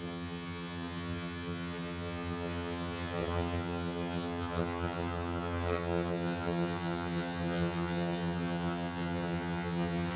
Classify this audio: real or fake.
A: fake